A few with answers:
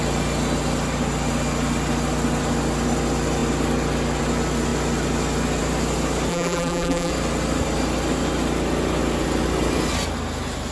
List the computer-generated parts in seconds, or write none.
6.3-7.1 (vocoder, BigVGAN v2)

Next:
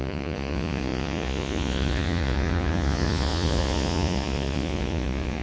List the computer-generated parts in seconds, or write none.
0.0-5.4 (vocoder, Vocos)

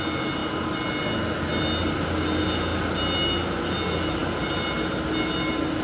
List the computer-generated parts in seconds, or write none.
none

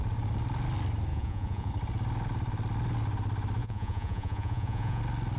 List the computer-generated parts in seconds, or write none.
1.1-1.7 (vocoder, Vocos); 3.6-5.0

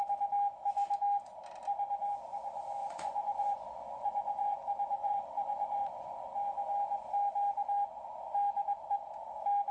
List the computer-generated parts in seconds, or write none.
2.8-4.6 (vocoder, Vocos); 5.0-6.2

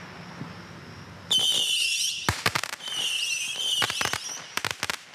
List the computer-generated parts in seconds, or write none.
1.5-4.6 (vocoder, BigVGAN v2)